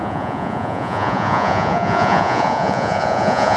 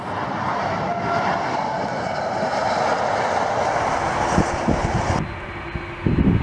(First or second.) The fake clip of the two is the first